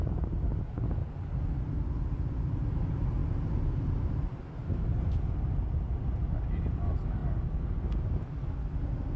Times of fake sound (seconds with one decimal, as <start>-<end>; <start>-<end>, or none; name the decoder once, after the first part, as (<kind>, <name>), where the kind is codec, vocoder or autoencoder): none